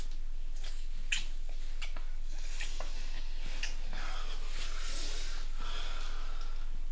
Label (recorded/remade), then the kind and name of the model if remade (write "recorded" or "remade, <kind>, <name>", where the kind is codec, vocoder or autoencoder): recorded